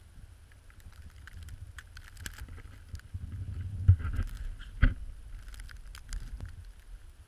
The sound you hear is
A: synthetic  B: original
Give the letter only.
B